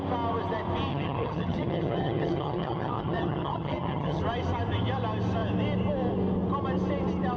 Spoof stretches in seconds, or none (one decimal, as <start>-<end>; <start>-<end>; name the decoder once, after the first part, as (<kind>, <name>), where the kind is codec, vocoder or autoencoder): 0.9-4.2 (vocoder, HiFi-GAN)